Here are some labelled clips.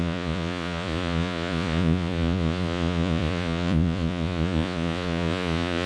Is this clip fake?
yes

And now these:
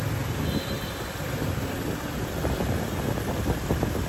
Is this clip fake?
no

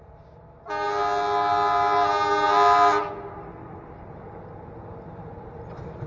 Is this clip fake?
no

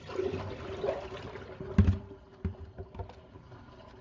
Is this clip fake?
no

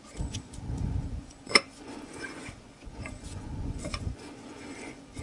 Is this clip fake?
yes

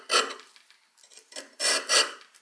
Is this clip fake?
no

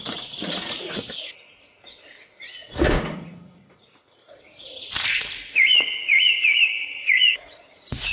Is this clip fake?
yes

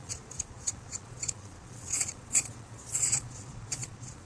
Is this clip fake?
yes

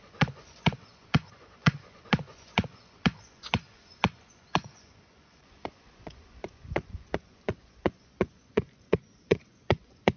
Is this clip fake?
yes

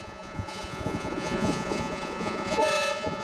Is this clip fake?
yes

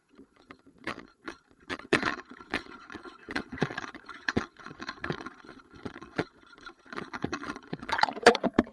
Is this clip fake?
yes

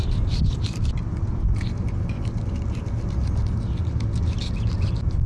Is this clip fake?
no